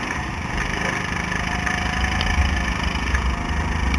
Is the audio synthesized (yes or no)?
no